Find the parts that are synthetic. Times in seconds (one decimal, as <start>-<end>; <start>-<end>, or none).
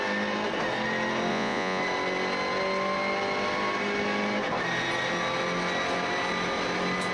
1.3-1.8